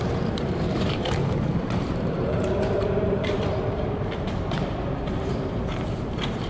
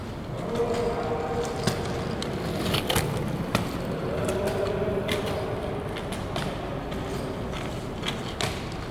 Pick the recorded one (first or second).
second